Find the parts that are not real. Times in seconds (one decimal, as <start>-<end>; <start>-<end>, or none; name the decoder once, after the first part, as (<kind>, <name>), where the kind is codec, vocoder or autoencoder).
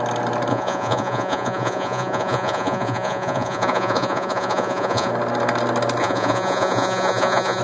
0.5-5.1 (vocoder, Vocos); 6.0-7.6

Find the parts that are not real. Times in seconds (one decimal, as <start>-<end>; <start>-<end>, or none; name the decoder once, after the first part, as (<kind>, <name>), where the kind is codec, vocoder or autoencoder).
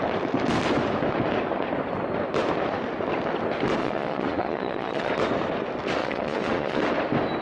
3.8-5.1 (vocoder, Vocos); 6.0-6.8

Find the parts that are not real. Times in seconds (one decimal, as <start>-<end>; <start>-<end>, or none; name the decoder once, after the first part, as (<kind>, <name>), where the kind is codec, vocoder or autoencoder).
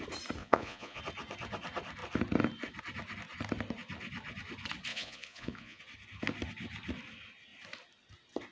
0.4-1.0 (vocoder, Vocos); 4.9-5.8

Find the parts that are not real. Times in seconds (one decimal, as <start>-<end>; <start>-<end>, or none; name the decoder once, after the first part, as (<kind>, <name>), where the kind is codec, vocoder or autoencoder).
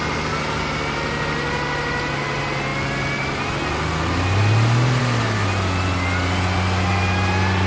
none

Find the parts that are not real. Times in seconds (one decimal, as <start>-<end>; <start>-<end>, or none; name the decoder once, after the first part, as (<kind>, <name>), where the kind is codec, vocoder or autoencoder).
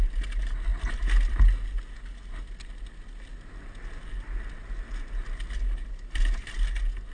none